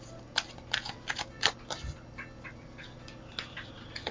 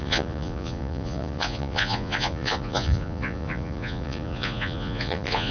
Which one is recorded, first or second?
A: first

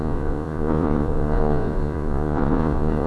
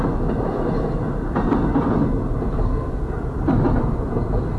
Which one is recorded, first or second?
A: second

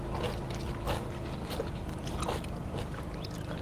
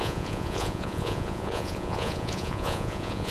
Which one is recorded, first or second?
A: first